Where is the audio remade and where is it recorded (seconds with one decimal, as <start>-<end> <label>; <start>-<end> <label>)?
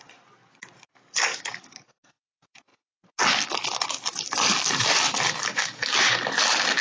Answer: 0.0-1.3 recorded; 1.3-2.1 remade; 2.1-6.8 recorded